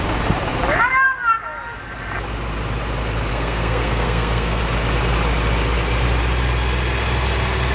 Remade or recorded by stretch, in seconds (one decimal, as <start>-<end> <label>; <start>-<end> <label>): 0.0-3.3 recorded; 3.3-4.6 remade; 4.6-7.7 recorded